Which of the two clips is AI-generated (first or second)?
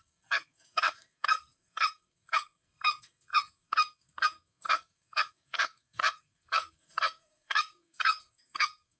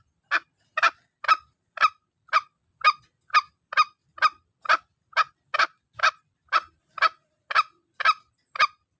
first